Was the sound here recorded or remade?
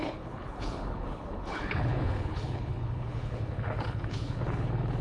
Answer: remade